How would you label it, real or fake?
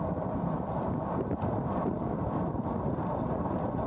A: real